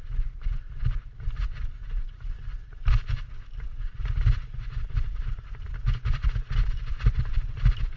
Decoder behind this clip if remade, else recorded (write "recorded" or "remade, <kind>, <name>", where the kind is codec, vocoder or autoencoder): remade, vocoder, BigVGAN v2